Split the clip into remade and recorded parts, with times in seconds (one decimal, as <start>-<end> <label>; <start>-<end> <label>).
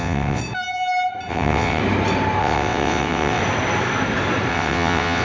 0.0-0.4 remade; 0.4-1.3 recorded; 1.3-1.8 remade; 1.8-2.4 recorded; 2.4-3.4 remade; 3.4-4.5 recorded; 4.5-5.2 remade